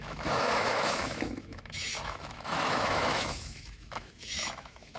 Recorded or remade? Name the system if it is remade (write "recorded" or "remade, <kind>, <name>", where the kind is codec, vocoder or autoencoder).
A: remade, autoencoder, DAC-VAE